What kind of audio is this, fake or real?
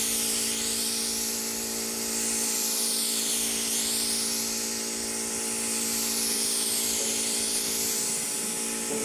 real